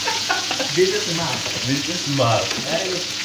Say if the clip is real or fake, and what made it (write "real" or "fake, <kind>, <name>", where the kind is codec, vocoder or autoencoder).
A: fake, vocoder, Vocos